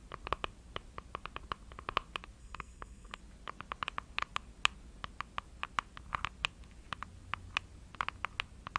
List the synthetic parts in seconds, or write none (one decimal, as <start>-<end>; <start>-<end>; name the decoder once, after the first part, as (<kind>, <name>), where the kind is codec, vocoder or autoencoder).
2.4-3.2 (codec, SNAC)